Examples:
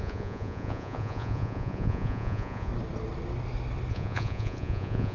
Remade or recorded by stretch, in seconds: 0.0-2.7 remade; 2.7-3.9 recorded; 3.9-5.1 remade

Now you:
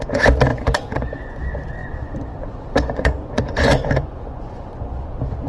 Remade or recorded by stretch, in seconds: 0.0-0.5 recorded; 0.5-1.4 remade; 1.4-1.8 recorded; 1.8-5.1 remade; 5.1-5.5 recorded